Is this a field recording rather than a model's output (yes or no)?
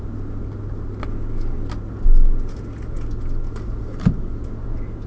yes